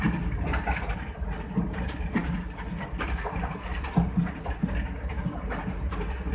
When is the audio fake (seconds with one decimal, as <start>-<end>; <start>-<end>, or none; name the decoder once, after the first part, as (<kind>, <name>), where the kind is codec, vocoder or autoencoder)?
none